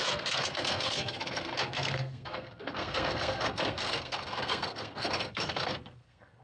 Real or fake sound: fake